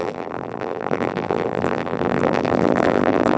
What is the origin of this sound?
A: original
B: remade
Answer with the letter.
B